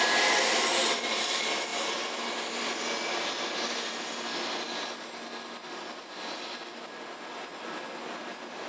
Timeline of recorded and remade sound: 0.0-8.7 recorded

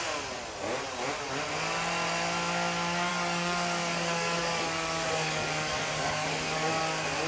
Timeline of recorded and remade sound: 0.0-3.1 recorded; 3.1-6.8 remade; 6.8-7.3 recorded